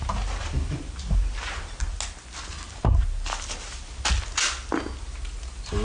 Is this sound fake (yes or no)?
no